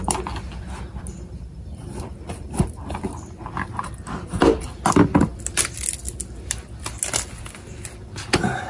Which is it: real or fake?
real